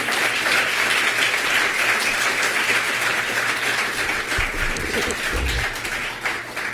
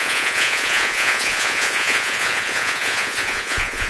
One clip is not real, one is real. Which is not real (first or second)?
second